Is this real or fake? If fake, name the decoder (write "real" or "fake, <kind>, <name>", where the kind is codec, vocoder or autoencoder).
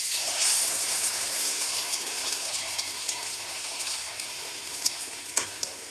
fake, codec, SNAC